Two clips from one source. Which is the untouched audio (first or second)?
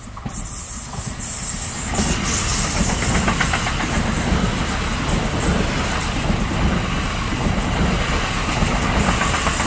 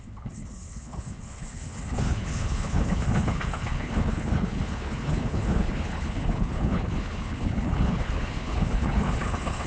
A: first